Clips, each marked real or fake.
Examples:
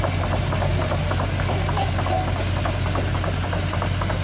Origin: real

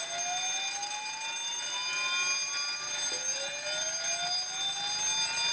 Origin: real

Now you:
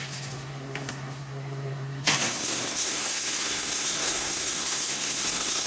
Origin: fake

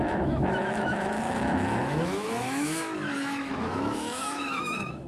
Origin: fake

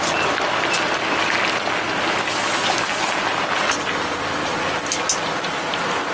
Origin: real